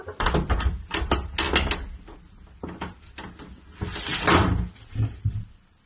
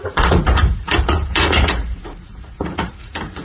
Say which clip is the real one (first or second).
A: first